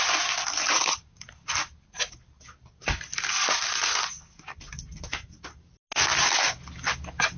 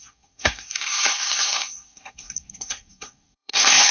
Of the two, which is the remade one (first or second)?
second